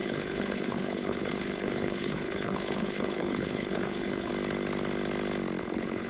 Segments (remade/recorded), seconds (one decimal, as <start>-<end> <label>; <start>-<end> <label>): 0.0-4.3 remade; 4.3-5.6 recorded; 5.6-6.1 remade